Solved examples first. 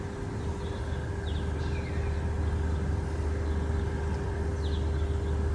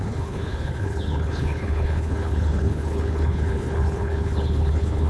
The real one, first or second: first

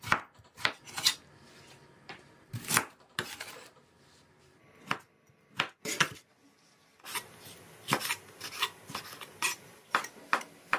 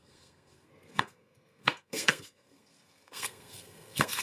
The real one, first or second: first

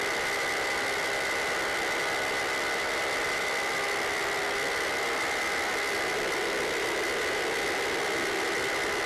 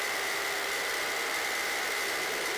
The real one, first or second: first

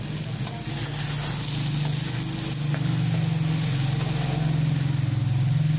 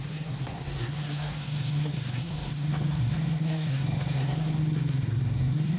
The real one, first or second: first